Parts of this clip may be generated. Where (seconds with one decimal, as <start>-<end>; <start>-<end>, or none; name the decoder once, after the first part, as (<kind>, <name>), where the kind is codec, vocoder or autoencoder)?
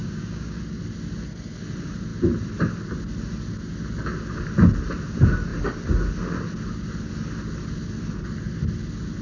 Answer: 0.0-0.6 (codec, DAC)